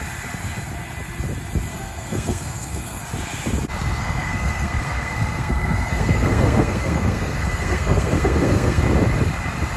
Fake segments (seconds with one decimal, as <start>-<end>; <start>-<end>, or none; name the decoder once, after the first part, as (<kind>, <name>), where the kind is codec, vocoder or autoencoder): 1.7-3.0 (codec, SNAC); 4.0-8.8